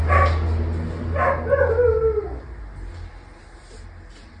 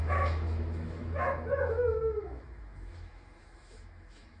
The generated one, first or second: second